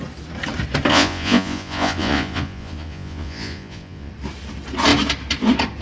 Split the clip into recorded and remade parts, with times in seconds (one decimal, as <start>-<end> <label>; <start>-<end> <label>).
0.0-0.9 recorded; 0.9-4.1 remade; 4.1-5.8 recorded